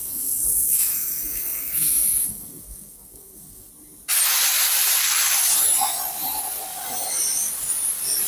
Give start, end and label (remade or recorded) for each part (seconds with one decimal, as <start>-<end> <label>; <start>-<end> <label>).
0.0-3.7 remade; 3.7-8.3 recorded